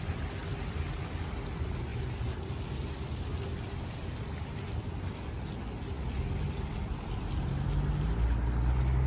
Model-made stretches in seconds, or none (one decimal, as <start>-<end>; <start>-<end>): 0.4-1.0; 1.9-2.6